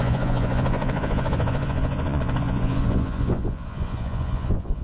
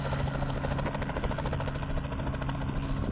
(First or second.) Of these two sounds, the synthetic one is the first